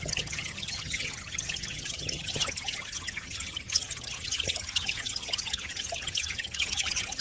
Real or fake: fake